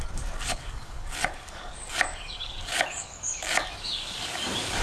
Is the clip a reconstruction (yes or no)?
yes